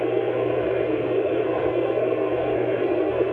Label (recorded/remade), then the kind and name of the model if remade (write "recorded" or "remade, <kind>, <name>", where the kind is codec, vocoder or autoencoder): remade, codec, SNAC